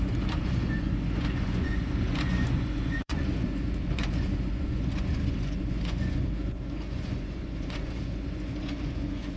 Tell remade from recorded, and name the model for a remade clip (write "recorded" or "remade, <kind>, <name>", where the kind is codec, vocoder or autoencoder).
remade, vocoder, Vocos